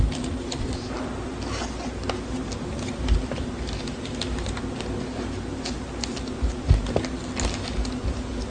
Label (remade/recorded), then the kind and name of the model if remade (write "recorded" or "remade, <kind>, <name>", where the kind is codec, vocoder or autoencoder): recorded